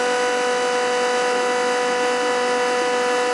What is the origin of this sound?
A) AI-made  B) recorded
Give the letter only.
B